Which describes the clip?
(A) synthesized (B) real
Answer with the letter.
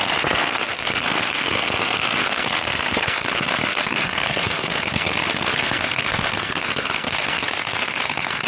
A